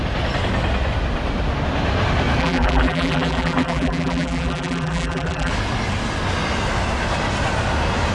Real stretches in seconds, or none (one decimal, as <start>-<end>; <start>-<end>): 0.0-2.4; 5.5-8.1